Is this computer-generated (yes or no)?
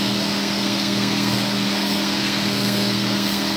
yes